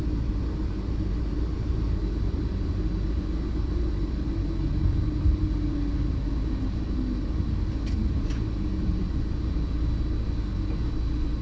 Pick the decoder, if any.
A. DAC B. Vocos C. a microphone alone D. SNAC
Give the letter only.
C